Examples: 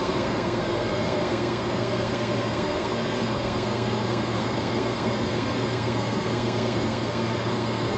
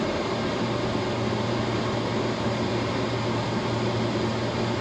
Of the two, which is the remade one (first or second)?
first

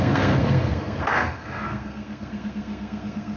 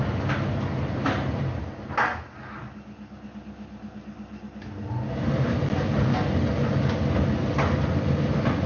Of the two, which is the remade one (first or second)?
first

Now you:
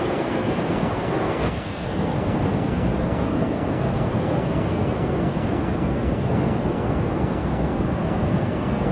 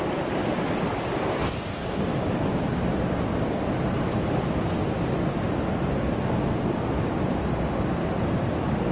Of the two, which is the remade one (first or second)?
first